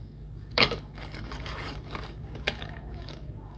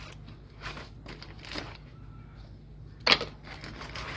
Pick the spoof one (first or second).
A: first